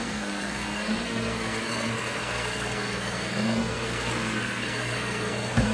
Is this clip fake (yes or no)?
yes